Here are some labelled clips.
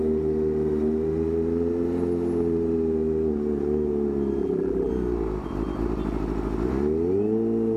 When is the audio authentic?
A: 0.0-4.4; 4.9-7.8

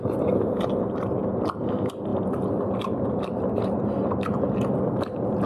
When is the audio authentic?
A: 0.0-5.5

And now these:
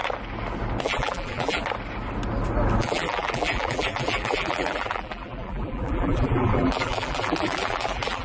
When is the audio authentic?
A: 0.0-0.8; 1.6-2.8

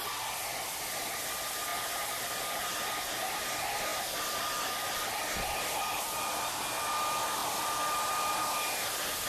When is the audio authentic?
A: 0.0-3.9; 5.1-7.4; 8.3-9.3